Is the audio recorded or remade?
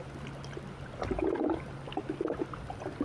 recorded